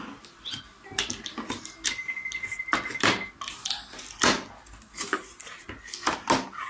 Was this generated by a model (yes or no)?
no